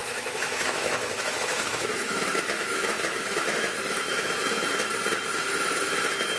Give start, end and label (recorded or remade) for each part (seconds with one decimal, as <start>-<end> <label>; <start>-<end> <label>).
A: 0.0-4.4 remade; 4.4-5.5 recorded; 5.5-6.4 remade